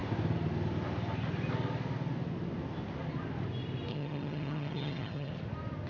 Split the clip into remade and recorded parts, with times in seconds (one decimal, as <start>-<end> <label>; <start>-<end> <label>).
0.0-3.9 recorded; 3.9-5.3 remade; 5.3-5.9 recorded